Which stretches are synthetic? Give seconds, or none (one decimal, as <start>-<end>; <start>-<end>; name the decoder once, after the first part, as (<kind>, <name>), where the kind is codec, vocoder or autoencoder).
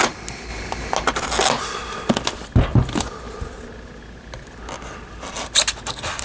none